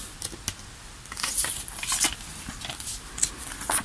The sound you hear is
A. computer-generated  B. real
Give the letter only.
B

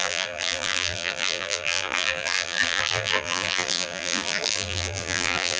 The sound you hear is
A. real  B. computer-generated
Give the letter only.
B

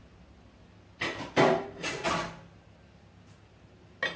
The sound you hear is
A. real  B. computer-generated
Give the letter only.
A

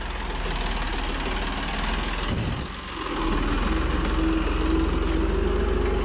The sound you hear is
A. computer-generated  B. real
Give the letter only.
B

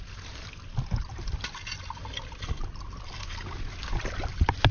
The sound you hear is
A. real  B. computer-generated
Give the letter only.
A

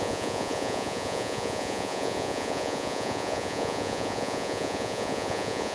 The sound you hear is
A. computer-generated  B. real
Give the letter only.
A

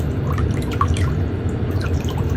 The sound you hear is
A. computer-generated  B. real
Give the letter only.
A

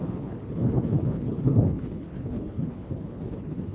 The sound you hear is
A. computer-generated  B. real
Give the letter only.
A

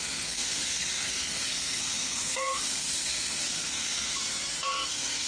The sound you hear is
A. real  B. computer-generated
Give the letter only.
B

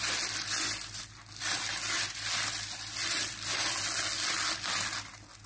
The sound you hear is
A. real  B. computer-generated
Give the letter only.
A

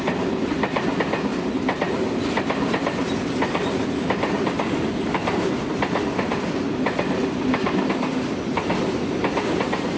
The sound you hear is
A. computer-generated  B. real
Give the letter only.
B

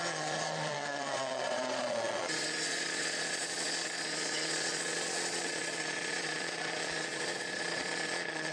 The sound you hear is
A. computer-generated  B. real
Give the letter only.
A